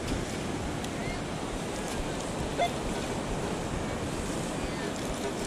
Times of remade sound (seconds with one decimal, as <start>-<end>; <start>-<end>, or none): none